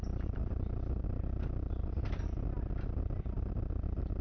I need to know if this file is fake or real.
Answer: real